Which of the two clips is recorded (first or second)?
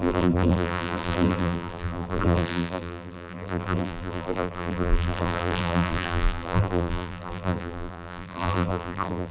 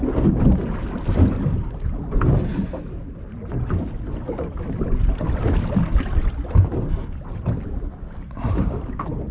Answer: second